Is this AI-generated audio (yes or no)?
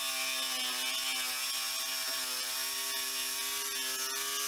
no